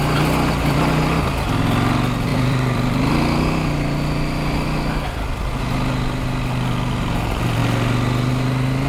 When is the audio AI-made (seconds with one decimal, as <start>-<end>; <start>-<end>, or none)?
2.3-3.1